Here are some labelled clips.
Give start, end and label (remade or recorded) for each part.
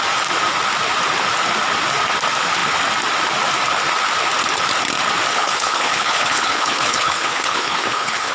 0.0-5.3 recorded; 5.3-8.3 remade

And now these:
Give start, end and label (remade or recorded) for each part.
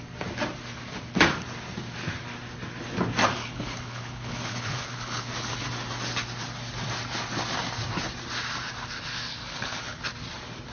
0.0-3.4 recorded; 3.4-5.3 remade; 5.3-9.3 recorded; 9.3-10.0 remade; 10.0-10.7 recorded